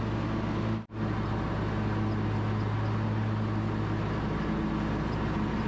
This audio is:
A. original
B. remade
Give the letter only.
A